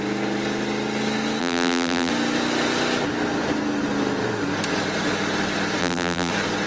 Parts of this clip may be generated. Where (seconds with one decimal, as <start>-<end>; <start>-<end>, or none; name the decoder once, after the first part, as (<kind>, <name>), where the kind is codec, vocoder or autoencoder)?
1.4-2.1 (vocoder, BigVGAN v2); 5.8-6.3